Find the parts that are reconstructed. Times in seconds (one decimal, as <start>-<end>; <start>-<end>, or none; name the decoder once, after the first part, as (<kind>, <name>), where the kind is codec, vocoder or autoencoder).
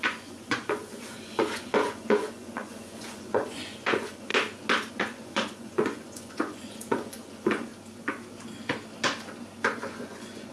0.0-4.3 (vocoder, Vocos); 4.9-7.7; 9.9-10.5